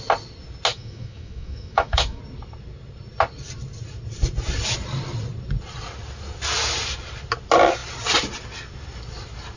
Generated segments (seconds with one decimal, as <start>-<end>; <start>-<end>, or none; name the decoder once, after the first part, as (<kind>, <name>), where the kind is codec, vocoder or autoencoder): 0.7-2.2 (autoencoder, DAC-VAE)